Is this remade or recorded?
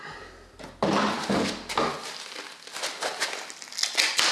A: recorded